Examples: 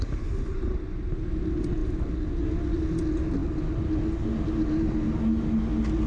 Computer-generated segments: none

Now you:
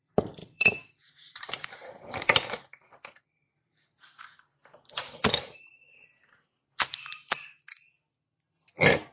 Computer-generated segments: 0.0-6.5 (vocoder, BigVGAN v2); 8.7-9.1

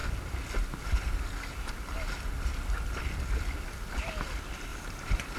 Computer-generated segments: 4.7-5.4 (vocoder, BigVGAN v2)

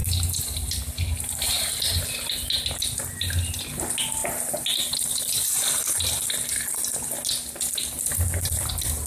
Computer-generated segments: none

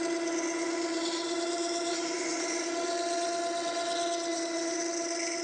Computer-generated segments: 0.9-2.7 (vocoder, BigVGAN v2); 4.3-4.8

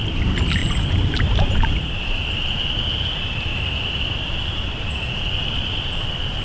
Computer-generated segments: 0.6-2.4 (vocoder, BigVGAN v2); 3.5-5.1